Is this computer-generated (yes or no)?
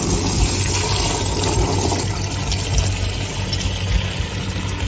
no